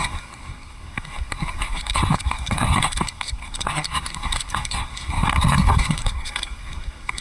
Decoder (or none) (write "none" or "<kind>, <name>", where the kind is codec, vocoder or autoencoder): codec, SNAC